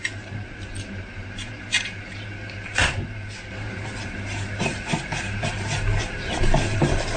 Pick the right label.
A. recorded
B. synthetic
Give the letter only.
B